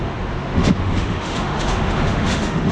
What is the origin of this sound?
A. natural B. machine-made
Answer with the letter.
B